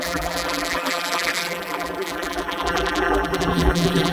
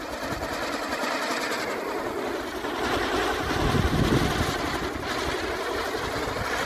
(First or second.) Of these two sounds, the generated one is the first